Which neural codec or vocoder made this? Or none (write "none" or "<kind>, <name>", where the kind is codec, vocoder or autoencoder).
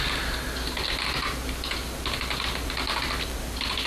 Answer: none